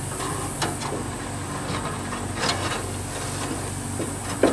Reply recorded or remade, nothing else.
recorded